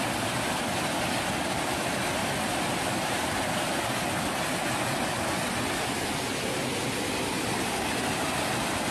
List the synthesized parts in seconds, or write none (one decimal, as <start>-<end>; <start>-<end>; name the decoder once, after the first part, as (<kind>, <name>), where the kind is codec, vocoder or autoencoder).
2.2-3.6 (vocoder, BigVGAN v2)